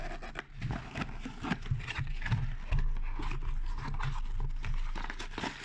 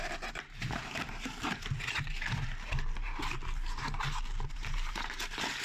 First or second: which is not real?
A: second